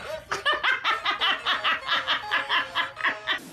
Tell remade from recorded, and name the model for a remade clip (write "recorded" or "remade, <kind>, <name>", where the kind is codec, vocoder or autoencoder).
recorded